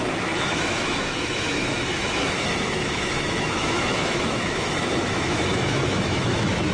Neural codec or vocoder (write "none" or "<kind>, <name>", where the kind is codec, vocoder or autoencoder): autoencoder, DAC-VAE